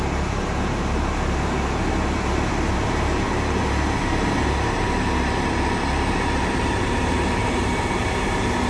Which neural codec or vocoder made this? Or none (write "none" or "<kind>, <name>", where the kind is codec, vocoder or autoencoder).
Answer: vocoder, BigVGAN v2